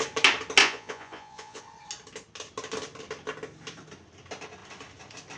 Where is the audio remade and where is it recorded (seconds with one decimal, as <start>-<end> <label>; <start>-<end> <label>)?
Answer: 0.0-0.6 recorded; 0.6-1.6 remade; 1.6-5.4 recorded

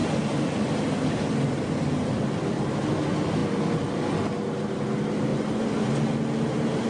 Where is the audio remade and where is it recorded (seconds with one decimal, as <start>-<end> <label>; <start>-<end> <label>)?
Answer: 0.0-5.3 recorded; 5.3-5.9 remade; 5.9-6.9 recorded

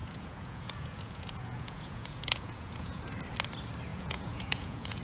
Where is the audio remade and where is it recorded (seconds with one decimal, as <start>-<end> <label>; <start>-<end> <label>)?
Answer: 0.0-3.0 remade; 3.0-3.9 recorded; 3.9-5.0 remade

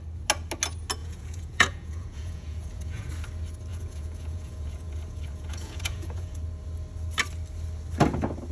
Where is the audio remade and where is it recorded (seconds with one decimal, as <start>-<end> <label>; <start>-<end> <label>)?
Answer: 0.0-1.0 recorded; 1.0-3.1 remade; 3.1-3.7 recorded; 3.7-6.4 remade; 6.4-8.5 recorded

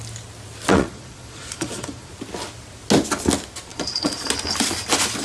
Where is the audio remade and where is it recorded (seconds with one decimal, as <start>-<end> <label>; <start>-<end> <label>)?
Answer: 0.0-0.7 recorded; 0.7-2.1 remade; 2.1-3.7 recorded; 3.7-4.3 remade; 4.3-5.2 recorded

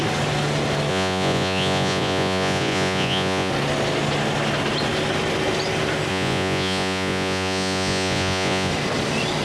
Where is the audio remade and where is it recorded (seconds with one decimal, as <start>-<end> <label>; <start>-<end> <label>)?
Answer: 0.0-0.9 recorded; 0.9-3.5 remade; 3.5-6.1 recorded; 6.1-8.7 remade; 8.7-9.4 recorded

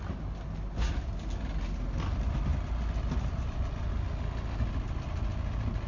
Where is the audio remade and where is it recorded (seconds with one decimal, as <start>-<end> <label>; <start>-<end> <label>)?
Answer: 0.0-5.9 recorded

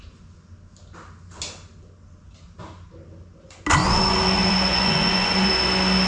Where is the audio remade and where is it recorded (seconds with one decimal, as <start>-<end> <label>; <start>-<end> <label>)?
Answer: 0.0-3.8 recorded; 3.8-5.5 remade; 5.5-6.1 recorded